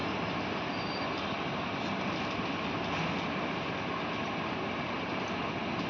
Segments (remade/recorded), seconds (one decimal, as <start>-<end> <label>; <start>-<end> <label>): 0.0-5.9 recorded